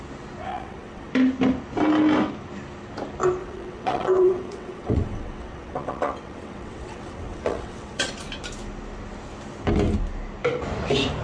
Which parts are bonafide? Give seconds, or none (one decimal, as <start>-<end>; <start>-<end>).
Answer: 0.0-0.5; 1.1-3.4; 8.1-11.2